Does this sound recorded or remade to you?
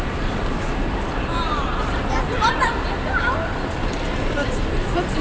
recorded